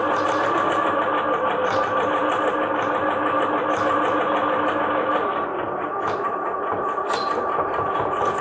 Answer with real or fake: real